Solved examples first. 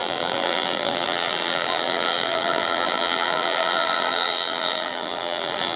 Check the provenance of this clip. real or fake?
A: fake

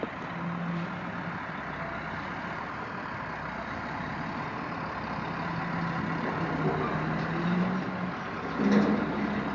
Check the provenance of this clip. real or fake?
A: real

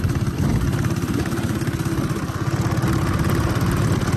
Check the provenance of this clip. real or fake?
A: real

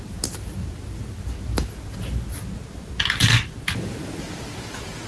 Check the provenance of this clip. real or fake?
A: real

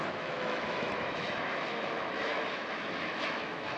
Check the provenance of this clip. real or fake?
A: fake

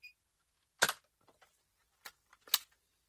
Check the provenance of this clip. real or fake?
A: real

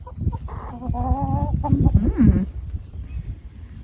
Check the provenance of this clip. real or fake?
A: real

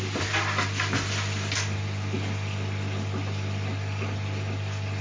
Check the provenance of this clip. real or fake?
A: real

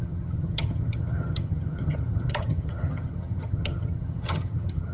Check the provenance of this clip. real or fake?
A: fake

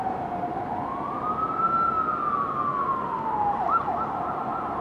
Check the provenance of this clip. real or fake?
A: real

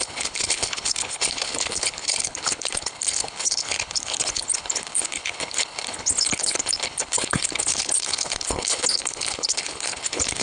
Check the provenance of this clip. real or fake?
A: fake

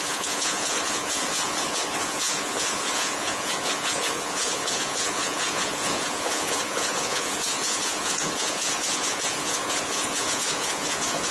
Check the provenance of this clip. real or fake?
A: fake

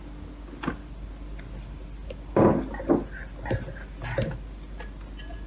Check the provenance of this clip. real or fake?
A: real